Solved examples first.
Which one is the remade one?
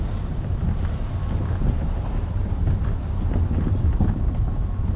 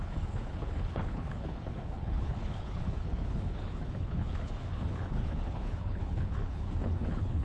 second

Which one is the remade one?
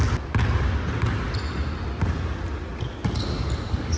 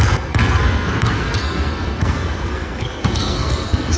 second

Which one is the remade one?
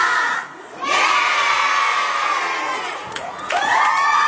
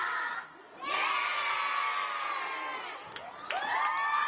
first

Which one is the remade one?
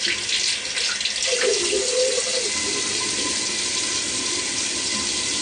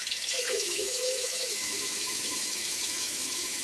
second